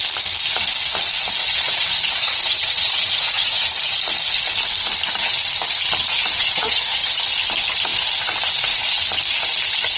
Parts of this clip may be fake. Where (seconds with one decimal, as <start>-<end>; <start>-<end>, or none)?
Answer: 1.4-3.7; 6.1-7.1